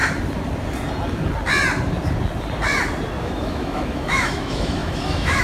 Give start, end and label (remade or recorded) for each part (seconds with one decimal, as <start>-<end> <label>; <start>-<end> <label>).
0.0-3.2 recorded; 3.2-5.4 remade